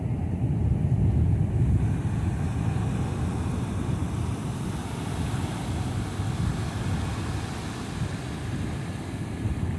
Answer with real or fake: real